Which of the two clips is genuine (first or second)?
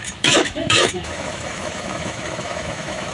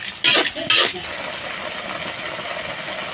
second